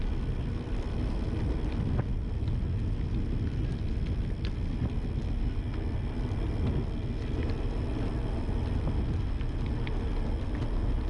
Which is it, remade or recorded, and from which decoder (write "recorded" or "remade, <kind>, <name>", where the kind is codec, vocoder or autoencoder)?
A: recorded